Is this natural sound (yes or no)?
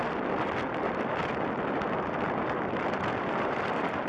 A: no